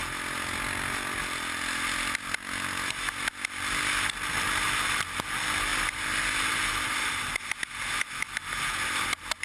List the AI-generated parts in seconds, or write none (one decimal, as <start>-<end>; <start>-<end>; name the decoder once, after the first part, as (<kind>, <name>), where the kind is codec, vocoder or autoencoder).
none